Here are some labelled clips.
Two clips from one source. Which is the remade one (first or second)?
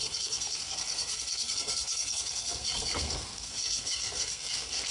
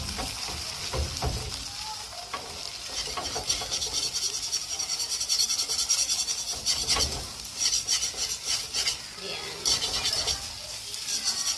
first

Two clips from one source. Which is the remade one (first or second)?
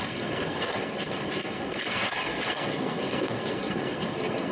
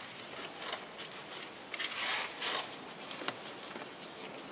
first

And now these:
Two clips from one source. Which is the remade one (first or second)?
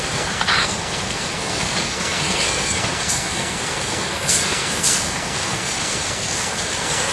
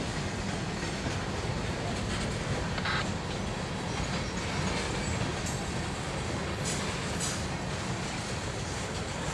first